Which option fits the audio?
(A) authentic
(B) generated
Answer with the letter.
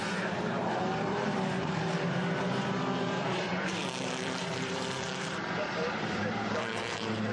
B